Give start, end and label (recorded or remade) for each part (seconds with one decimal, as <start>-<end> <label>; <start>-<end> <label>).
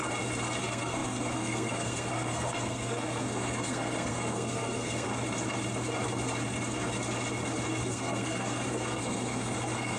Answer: 0.0-0.6 recorded; 0.6-5.1 remade; 5.1-7.8 recorded; 7.8-10.0 remade